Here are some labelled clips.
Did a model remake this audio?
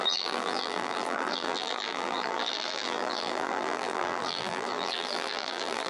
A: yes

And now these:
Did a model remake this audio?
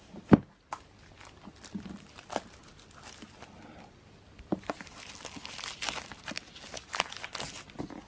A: no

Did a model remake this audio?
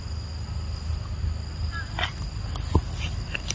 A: no